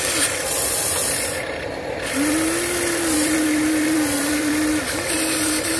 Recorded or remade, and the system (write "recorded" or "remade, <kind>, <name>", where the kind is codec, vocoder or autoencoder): remade, vocoder, BigVGAN v2